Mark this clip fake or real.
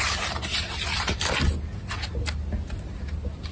real